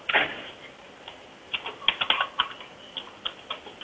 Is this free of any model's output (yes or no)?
yes